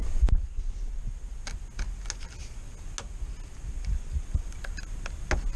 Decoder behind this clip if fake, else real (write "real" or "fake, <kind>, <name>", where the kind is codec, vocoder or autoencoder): real